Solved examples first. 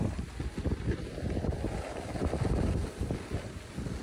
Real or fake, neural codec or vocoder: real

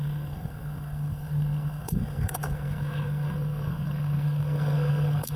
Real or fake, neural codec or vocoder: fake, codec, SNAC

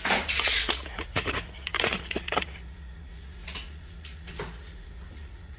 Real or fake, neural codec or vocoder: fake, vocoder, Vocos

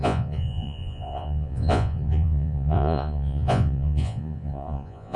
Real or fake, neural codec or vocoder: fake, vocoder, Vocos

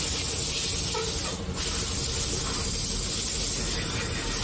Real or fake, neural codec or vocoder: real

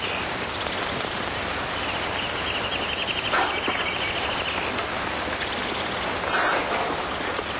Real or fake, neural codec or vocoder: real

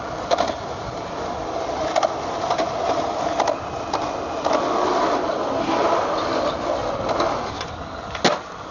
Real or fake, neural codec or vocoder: real